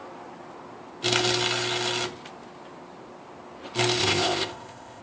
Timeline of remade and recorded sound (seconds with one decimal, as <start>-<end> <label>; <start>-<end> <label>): 0.0-4.0 recorded; 4.0-5.0 remade